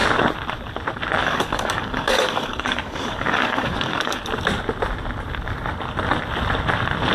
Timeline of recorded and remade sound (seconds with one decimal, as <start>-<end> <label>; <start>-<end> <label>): 0.0-1.2 recorded; 1.2-4.2 remade; 4.2-7.1 recorded